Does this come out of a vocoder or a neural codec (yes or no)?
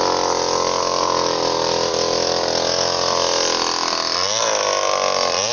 yes